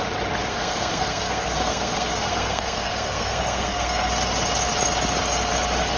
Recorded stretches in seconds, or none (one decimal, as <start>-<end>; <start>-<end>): 0.0-0.5; 4.1-6.0